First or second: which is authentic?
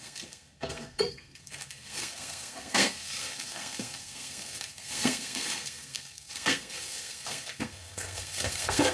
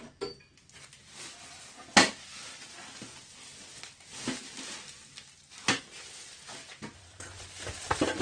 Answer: second